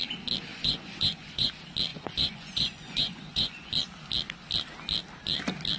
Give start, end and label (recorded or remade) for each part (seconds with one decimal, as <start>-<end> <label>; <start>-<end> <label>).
0.0-0.5 recorded; 0.5-1.5 remade; 1.5-1.9 recorded; 1.9-3.7 remade; 3.7-5.8 recorded